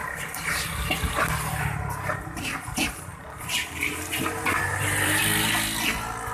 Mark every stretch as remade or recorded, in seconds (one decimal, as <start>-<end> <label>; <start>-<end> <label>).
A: 0.0-3.1 recorded; 3.1-5.2 remade; 5.2-6.3 recorded